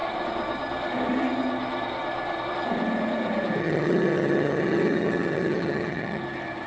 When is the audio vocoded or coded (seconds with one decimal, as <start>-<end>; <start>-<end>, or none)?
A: 3.6-6.2